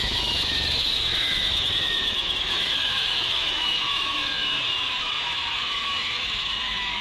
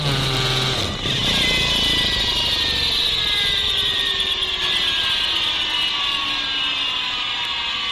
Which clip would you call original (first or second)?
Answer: second